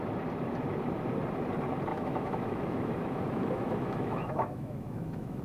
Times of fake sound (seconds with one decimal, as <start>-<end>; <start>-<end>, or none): 1.9-5.4